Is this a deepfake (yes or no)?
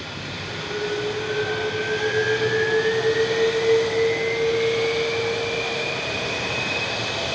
no